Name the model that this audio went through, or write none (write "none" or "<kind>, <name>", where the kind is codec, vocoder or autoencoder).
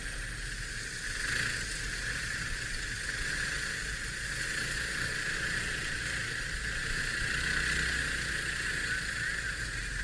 none